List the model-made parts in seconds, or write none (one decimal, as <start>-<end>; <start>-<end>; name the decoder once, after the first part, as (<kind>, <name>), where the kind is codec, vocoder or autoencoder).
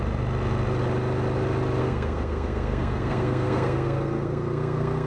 1.8-5.1 (codec, SNAC)